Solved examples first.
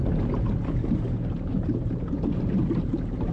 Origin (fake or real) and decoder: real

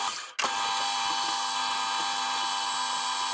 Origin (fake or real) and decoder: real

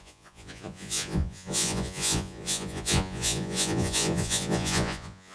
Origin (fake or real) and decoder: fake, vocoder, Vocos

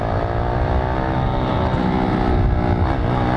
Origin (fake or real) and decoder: real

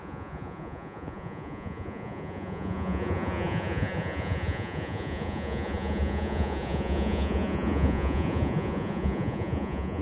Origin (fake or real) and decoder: fake, vocoder, Vocos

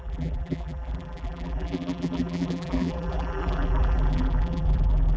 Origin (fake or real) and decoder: fake, vocoder, BigVGAN v2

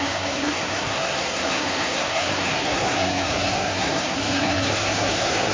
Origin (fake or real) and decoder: fake, codec, SNAC